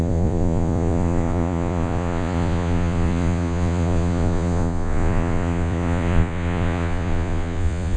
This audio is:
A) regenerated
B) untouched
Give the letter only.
A